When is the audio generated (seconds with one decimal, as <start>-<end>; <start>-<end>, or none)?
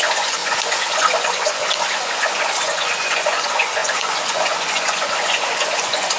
0.0-6.2